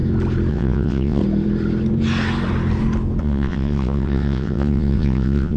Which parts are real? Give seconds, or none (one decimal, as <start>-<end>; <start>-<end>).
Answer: 0.0-0.5; 1.2-3.2

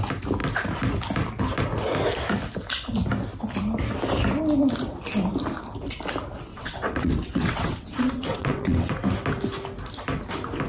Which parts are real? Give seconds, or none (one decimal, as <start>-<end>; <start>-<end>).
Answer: 0.0-6.5; 8.9-10.7